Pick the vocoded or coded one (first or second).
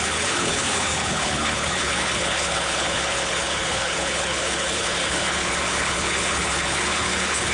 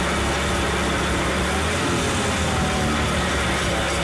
first